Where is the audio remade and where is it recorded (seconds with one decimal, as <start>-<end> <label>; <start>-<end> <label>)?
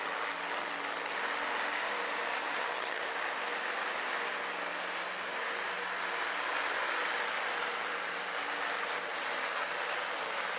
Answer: 0.0-2.3 recorded; 2.3-3.0 remade; 3.0-10.6 recorded